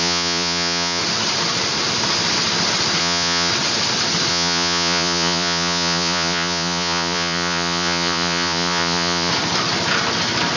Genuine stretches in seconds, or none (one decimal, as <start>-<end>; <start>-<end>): 1.0-3.0; 3.5-4.3; 9.3-10.6